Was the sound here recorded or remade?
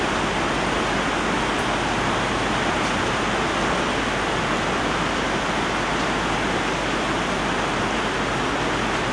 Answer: recorded